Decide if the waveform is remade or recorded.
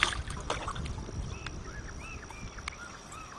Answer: recorded